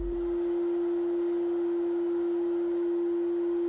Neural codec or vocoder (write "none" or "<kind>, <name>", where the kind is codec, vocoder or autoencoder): none